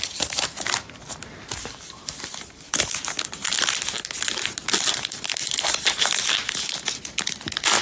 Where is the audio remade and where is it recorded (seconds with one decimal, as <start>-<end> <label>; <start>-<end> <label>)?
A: 0.0-3.4 remade; 3.4-4.7 recorded; 4.7-7.8 remade